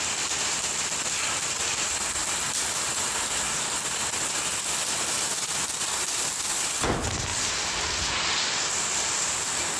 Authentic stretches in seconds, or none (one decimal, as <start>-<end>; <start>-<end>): 0.0-2.2; 3.1-4.8; 5.3-9.8